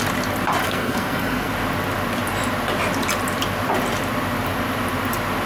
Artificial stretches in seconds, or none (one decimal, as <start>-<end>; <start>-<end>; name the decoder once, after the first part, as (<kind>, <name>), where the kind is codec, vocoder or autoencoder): 0.6-1.5 (codec, SNAC)